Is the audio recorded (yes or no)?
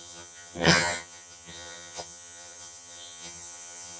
no